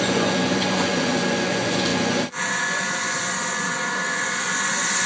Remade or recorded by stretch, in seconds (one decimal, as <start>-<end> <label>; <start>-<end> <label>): 0.0-5.1 remade